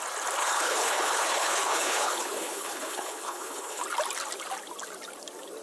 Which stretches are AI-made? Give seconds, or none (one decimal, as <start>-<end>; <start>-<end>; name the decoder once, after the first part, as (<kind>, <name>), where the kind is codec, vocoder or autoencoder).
0.4-3.8 (codec, HILCodec)

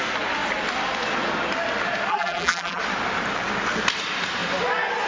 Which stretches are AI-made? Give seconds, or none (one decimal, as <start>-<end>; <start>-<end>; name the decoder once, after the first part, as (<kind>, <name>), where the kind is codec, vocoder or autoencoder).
2.1-2.8 (vocoder, BigVGAN v2)